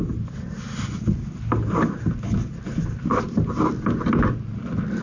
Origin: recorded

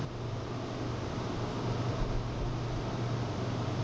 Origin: recorded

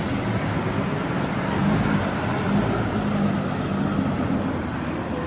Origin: recorded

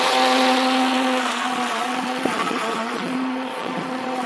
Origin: remade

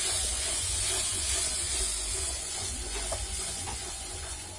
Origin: remade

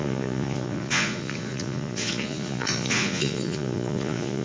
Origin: remade